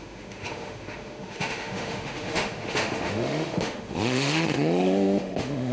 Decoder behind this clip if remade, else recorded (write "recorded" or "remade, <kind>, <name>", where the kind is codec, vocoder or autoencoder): remade, autoencoder, DAC-VAE